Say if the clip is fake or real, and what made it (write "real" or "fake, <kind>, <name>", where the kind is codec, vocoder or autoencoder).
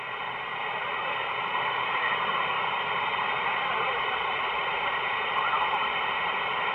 fake, vocoder, BigVGAN v2